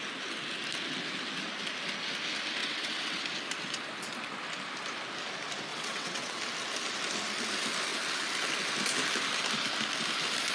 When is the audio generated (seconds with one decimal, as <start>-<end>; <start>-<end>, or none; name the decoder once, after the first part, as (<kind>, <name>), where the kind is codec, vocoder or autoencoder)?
2.6-3.2 (vocoder, WaveNeXt); 5.7-6.4